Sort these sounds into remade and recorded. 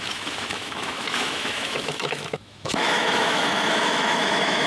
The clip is remade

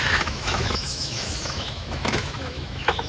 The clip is remade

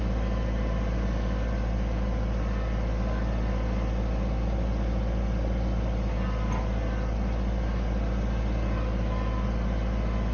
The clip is recorded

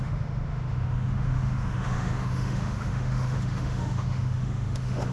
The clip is remade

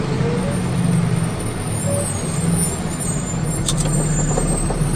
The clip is recorded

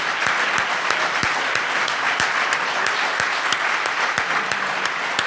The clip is recorded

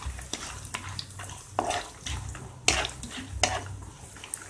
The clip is recorded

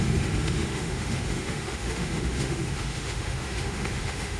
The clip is remade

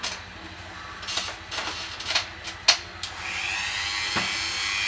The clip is recorded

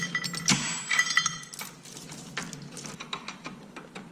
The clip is recorded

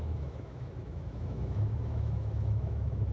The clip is remade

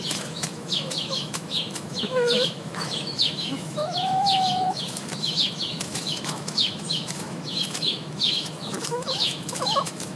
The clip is remade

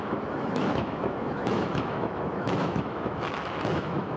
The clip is remade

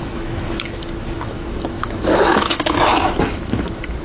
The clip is remade